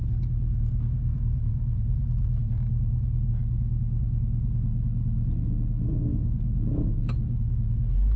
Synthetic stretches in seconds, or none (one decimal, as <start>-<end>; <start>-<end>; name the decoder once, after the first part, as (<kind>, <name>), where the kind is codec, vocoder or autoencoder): 0.0-3.3 (vocoder, BigVGAN v2); 6.1-7.5